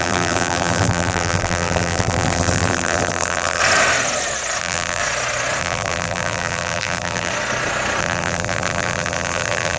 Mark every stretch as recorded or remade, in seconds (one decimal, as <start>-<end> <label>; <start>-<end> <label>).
0.0-3.6 remade; 3.6-4.6 recorded; 4.6-5.0 remade; 5.0-5.6 recorded; 5.6-7.3 remade; 7.3-8.0 recorded; 8.0-9.8 remade

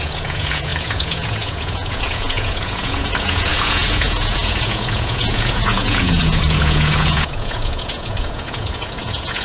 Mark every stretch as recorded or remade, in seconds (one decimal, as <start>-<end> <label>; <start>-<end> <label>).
0.0-9.4 remade

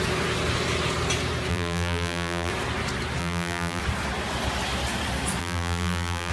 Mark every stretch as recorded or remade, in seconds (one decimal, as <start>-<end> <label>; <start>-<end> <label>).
0.0-1.5 recorded; 1.5-2.5 remade; 2.5-3.2 recorded; 3.2-3.8 remade; 3.8-5.4 recorded; 5.4-6.3 remade

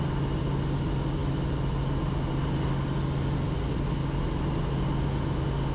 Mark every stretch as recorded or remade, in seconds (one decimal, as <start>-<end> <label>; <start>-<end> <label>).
0.0-5.7 recorded